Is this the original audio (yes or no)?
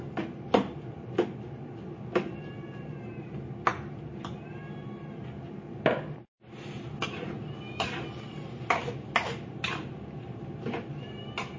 yes